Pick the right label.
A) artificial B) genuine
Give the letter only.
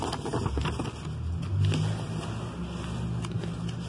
B